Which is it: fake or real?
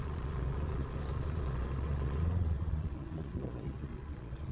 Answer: fake